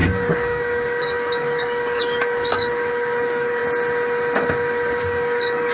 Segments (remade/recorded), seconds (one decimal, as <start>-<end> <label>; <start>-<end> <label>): 0.0-3.6 remade; 3.6-5.0 recorded; 5.0-5.7 remade